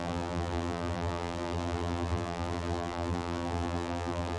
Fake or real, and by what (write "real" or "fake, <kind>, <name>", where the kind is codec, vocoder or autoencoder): fake, vocoder, BigVGAN v2